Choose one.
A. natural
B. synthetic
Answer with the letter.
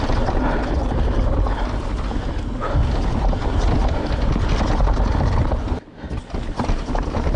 A